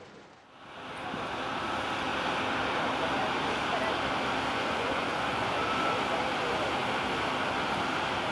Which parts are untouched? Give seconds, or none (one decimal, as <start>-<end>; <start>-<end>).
0.0-4.5; 5.6-8.3